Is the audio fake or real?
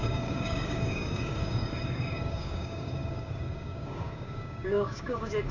fake